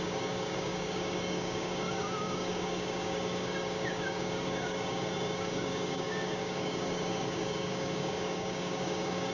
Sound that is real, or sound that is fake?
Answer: fake